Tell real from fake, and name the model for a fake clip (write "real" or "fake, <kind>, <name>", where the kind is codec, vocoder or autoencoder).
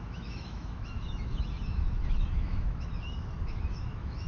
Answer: fake, autoencoder, DAC-VAE